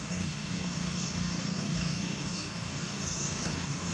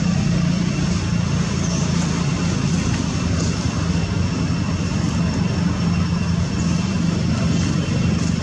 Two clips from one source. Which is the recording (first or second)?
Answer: second